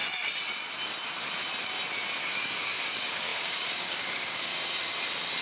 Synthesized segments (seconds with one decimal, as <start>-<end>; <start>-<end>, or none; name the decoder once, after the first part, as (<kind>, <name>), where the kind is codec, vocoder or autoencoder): 2.2-4.5 (codec, DAC)